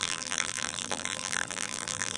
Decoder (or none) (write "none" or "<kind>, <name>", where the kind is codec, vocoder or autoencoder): vocoder, BigVGAN v2